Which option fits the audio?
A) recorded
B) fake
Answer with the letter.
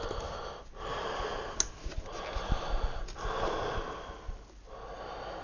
A